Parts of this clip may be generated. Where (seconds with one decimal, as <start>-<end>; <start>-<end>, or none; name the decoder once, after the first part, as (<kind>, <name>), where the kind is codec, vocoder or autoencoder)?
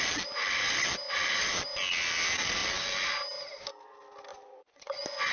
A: 4.3-5.3 (vocoder, Vocos)